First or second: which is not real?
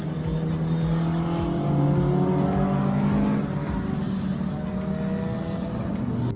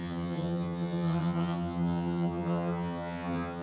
second